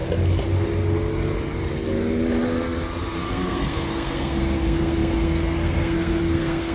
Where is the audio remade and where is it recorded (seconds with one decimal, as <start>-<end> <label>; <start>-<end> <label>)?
0.0-3.3 recorded; 3.3-6.7 remade